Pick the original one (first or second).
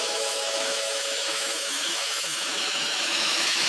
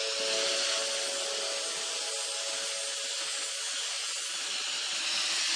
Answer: second